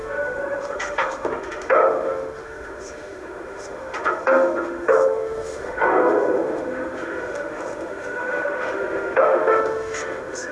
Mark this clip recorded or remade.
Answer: remade